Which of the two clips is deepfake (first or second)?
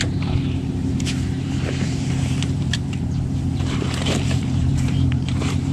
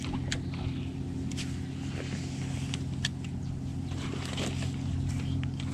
first